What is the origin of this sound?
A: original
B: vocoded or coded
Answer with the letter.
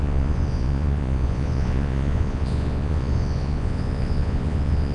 B